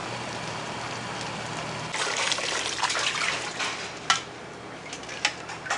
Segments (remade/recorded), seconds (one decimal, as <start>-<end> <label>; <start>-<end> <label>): 0.0-5.8 recorded